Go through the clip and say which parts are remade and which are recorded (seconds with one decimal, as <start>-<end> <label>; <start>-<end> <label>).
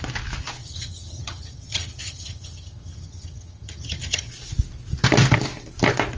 0.0-0.6 recorded; 0.6-4.3 remade; 4.3-6.2 recorded